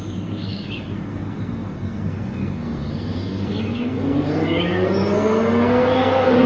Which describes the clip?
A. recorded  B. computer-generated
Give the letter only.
B